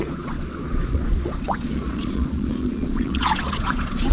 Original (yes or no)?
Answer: no